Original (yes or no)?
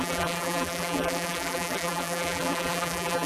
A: no